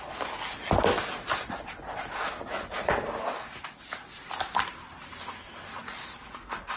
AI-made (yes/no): no